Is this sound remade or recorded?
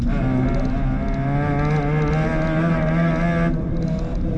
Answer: recorded